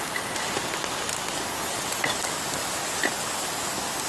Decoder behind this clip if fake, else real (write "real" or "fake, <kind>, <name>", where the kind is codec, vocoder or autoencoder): real